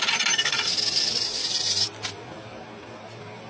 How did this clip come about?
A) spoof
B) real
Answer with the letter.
B